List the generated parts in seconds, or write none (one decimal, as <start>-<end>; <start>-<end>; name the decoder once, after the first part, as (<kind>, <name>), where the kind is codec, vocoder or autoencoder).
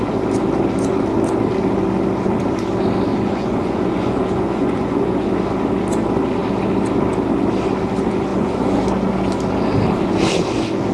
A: 3.1-5.3 (vocoder, Vocos); 8.3-8.8